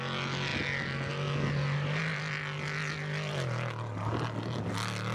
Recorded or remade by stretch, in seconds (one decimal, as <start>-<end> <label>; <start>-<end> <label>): 0.0-5.1 recorded